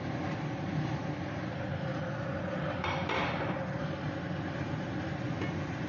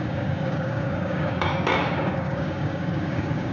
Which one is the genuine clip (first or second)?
first